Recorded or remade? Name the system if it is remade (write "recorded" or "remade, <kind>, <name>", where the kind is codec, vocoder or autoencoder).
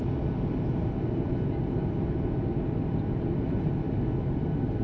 recorded